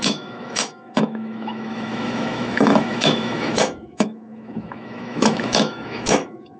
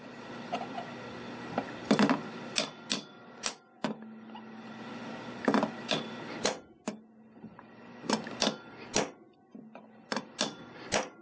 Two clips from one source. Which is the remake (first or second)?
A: first